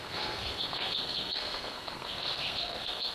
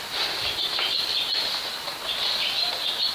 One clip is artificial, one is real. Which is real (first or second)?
second